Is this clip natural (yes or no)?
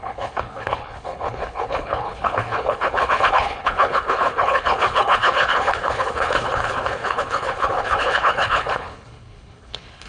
no